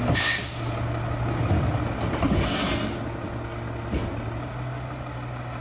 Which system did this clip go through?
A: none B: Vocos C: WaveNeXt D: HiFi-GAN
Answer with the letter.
A